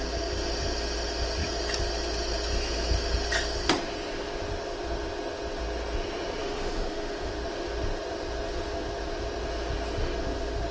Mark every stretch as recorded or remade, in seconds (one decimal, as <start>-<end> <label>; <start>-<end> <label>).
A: 0.0-6.4 recorded; 6.4-7.3 remade; 7.3-10.7 recorded